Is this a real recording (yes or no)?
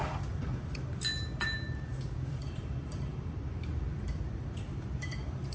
no